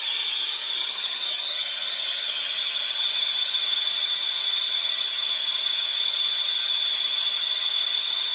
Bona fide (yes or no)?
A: no